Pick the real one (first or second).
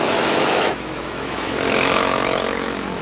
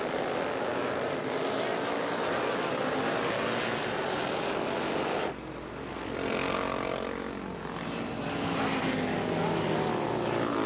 second